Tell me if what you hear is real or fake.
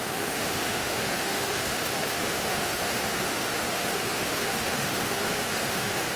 fake